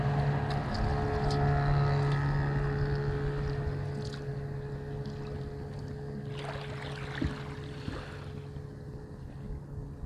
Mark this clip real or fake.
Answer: real